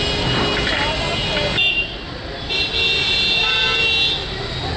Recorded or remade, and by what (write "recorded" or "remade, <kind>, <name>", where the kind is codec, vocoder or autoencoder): recorded